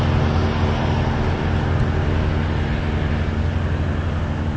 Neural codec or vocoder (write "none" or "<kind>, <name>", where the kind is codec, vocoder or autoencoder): none